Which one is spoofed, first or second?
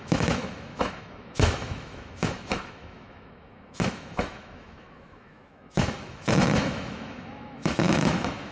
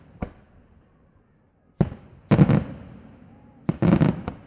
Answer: first